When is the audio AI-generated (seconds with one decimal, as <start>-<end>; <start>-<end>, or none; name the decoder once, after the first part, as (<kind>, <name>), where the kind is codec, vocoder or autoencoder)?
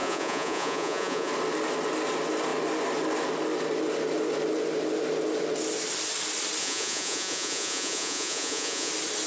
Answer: 0.0-1.3 (vocoder, Vocos); 6.6-8.9